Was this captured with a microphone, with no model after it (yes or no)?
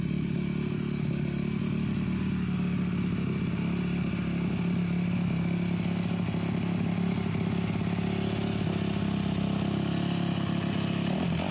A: yes